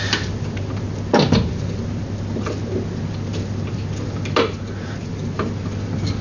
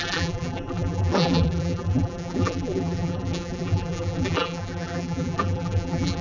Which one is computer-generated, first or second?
second